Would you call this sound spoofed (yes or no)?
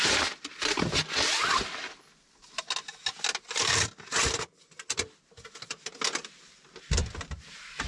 no